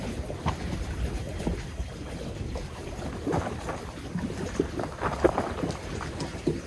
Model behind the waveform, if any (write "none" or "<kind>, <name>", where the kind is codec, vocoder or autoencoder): none